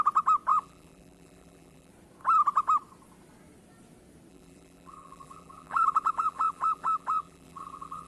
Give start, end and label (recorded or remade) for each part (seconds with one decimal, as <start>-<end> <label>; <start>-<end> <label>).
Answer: 0.0-0.5 recorded; 0.5-1.9 remade; 1.9-4.3 recorded; 4.3-8.1 remade

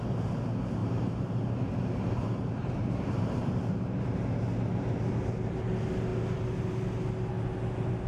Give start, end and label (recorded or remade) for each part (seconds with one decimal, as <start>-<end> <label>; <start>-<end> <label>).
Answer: 0.0-0.8 recorded; 0.8-4.1 remade; 4.1-8.1 recorded

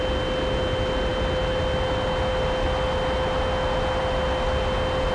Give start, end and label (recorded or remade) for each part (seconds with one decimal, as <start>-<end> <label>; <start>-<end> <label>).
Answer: 0.0-5.1 recorded

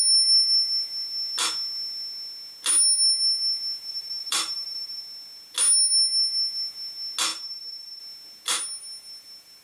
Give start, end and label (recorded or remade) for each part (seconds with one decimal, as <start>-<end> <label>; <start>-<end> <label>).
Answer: 0.0-3.9 recorded; 3.9-5.0 remade; 5.0-7.3 recorded; 7.3-8.0 remade; 8.0-9.6 recorded

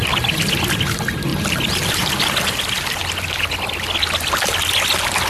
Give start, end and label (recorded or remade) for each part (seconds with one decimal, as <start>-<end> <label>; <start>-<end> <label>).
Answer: 0.0-5.3 recorded

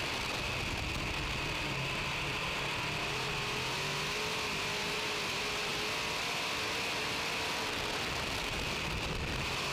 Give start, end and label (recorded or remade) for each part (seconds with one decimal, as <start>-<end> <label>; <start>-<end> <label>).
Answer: 0.0-9.7 recorded